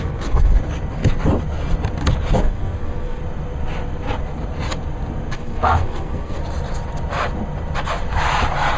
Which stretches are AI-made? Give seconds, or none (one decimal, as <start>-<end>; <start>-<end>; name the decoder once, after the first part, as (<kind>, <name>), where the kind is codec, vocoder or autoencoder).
0.0-0.5 (codec, SNAC); 2.4-3.2; 5.3-6.4